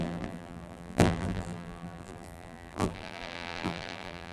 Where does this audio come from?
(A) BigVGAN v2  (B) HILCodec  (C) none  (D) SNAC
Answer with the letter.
A